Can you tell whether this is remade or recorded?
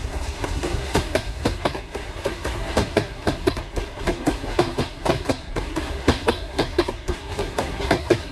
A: remade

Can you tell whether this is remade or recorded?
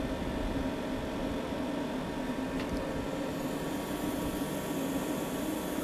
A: recorded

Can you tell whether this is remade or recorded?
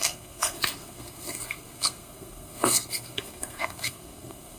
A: remade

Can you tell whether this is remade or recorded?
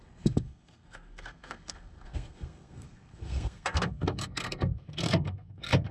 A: remade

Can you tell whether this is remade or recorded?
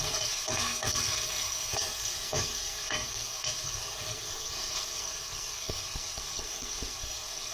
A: remade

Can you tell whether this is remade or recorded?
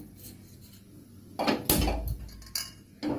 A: recorded